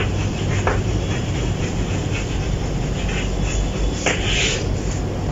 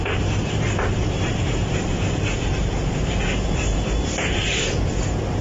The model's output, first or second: second